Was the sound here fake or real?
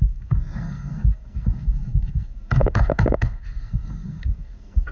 fake